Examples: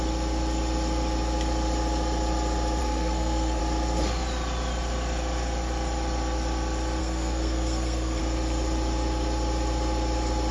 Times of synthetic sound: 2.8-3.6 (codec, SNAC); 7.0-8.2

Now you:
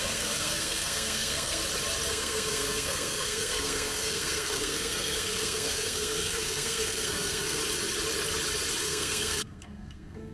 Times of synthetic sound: 0.0-1.6 (codec, SNAC); 2.1-7.6; 8.8-10.3

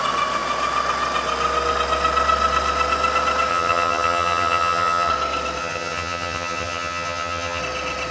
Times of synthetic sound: 3.5-5.1 (vocoder, HiFi-GAN); 5.6-7.6

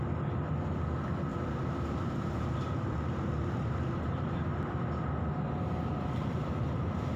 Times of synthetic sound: 1.3-4.6 (vocoder, BigVGAN v2)

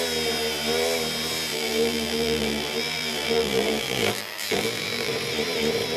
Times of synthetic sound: 1.5-5.1 (vocoder, BigVGAN v2)

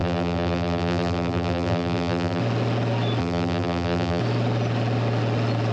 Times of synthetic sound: 0.0-2.4 (vocoder, BigVGAN v2); 3.2-4.2

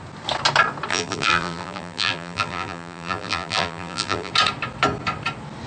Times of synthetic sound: 0.9-4.3 (vocoder, BigVGAN v2)

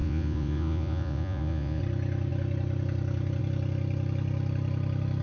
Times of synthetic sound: 0.0-1.8 (vocoder, Vocos)